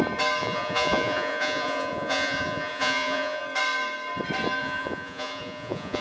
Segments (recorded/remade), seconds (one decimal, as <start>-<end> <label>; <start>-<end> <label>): 0.0-0.4 recorded; 0.4-3.4 remade; 3.4-4.6 recorded; 4.6-6.0 remade